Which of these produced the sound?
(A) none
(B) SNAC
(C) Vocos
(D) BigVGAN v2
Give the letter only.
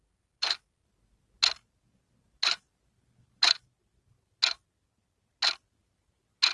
A